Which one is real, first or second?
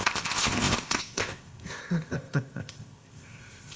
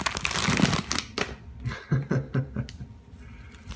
second